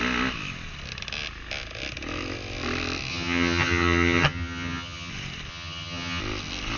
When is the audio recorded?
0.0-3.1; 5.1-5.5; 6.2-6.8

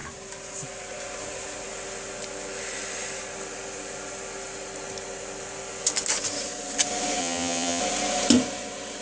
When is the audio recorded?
0.0-7.2; 7.8-9.0

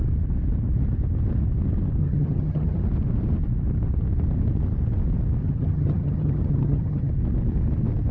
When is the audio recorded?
0.0-2.0; 2.8-5.4; 7.1-8.1

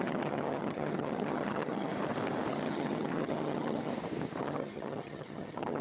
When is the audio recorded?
1.9-2.5; 3.9-4.4

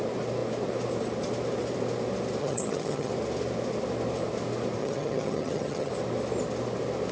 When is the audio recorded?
0.0-2.4; 3.1-4.8; 5.9-7.1

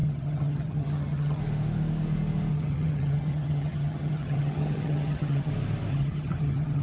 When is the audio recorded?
1.4-2.5; 5.5-5.9

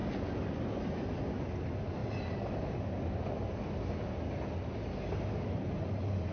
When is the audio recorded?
0.0-6.3

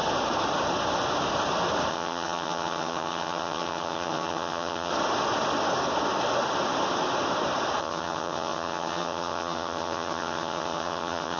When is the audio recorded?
0.0-1.9; 4.9-7.8